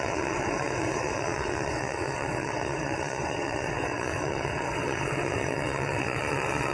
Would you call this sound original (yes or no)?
no